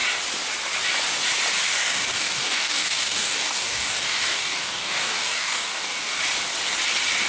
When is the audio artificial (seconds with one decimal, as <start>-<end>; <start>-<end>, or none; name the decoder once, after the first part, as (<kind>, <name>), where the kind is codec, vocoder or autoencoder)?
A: 1.8-6.2 (codec, DAC)